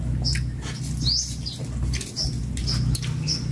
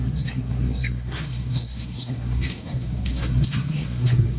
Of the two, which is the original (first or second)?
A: first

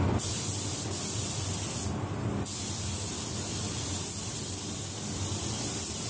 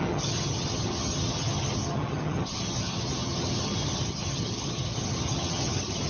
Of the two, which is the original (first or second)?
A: first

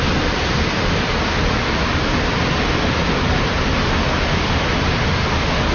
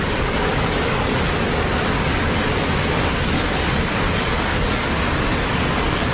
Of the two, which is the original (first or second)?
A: first